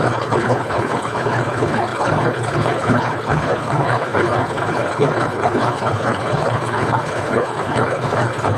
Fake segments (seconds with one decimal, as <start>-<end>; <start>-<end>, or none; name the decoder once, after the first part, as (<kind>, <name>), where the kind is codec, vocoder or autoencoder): 0.0-8.6 (codec, HILCodec)